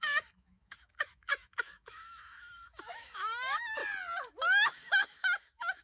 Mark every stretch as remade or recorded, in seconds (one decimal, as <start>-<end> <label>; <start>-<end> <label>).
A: 0.0-3.8 remade; 3.8-4.3 recorded; 4.3-5.8 remade